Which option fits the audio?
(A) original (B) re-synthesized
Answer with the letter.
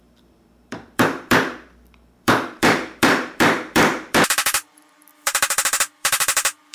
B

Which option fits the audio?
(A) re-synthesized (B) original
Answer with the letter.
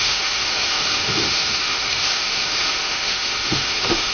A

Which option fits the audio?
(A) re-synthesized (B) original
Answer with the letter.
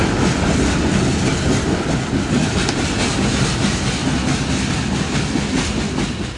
B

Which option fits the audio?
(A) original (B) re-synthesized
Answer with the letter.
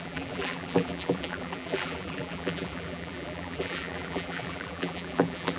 B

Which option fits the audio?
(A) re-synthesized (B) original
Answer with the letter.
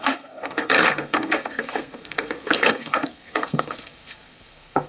A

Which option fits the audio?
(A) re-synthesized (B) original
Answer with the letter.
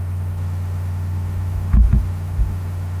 A